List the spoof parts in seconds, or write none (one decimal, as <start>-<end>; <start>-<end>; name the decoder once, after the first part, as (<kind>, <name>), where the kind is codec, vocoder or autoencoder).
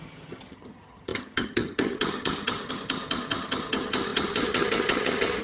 0.0-5.4 (vocoder, HiFi-GAN)